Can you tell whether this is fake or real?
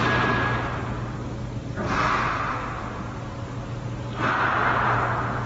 real